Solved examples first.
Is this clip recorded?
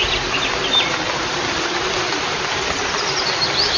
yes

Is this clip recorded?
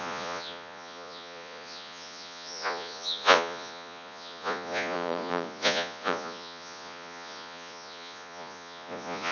no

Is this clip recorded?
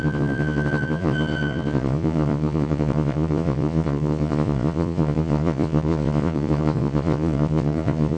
no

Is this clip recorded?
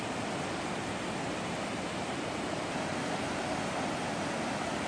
yes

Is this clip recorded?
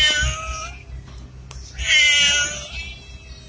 yes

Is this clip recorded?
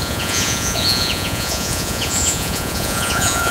no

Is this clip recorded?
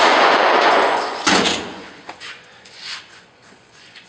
no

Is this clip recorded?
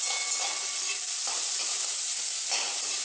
yes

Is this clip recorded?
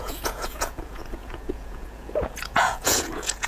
no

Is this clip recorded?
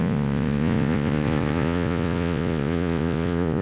no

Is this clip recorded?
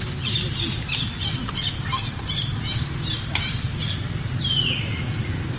yes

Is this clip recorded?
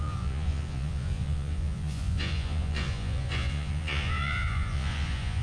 no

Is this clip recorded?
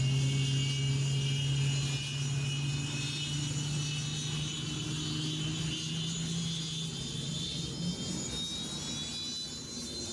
yes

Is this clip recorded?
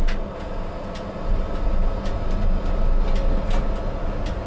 yes